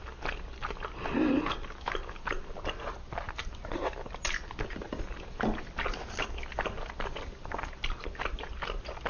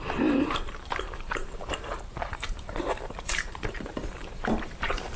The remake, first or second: second